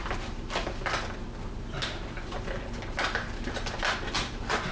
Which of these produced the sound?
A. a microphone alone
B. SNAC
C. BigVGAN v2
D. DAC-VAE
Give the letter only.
A